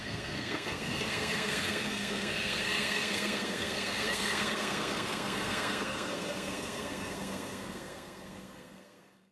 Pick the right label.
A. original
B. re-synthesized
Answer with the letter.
B